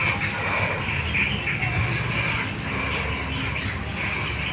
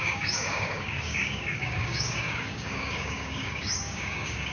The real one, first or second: first